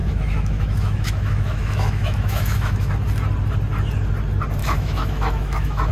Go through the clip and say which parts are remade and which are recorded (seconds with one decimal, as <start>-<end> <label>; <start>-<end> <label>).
0.0-2.9 remade; 2.9-4.6 recorded; 4.6-5.9 remade